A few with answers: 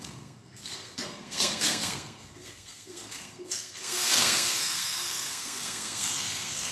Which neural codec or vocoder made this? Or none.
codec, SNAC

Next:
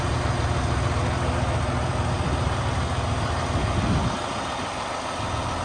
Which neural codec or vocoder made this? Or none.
none